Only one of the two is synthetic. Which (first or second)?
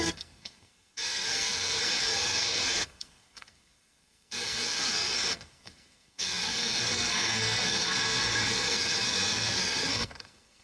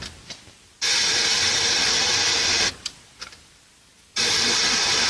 first